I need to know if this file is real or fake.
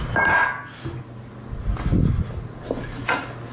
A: real